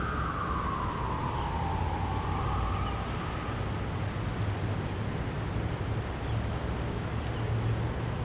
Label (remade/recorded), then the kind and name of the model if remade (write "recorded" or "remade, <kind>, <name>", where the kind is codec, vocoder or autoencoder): recorded